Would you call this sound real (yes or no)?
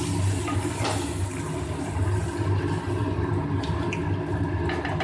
yes